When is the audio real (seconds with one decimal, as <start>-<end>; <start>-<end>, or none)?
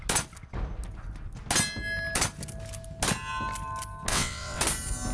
0.0-4.1; 4.6-5.1